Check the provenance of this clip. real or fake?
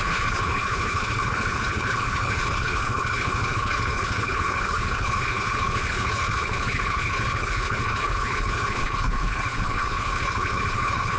fake